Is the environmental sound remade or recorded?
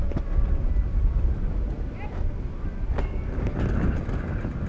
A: recorded